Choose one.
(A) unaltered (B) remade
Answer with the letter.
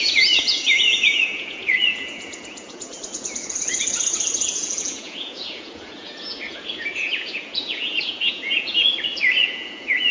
B